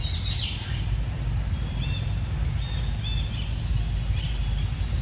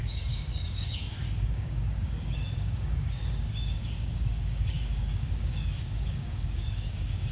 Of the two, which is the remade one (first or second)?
second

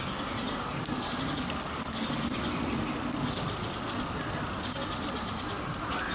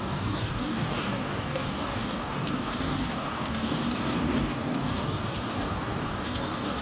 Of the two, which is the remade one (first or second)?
second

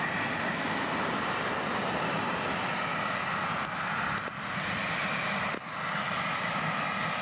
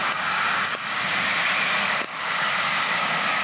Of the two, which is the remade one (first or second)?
second